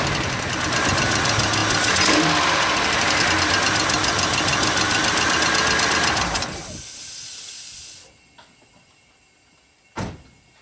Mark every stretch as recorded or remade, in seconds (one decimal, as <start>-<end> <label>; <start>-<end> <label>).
0.0-4.5 recorded; 4.5-5.3 remade; 5.3-10.6 recorded